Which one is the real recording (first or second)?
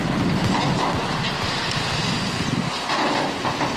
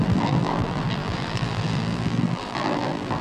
first